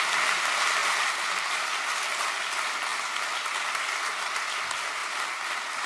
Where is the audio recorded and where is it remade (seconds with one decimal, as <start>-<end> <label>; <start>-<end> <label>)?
0.0-5.9 recorded